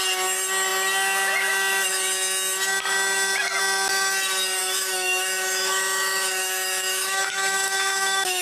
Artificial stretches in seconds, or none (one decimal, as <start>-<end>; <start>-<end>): 4.6-8.4